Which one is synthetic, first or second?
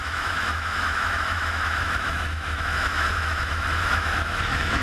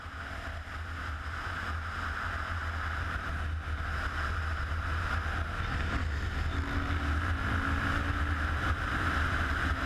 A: first